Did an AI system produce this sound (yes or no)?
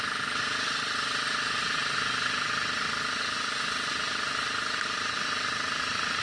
no